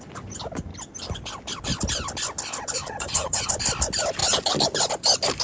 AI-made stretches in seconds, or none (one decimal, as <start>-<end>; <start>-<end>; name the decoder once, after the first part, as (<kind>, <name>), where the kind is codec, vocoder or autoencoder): 2.8-3.5 (vocoder, HiFi-GAN)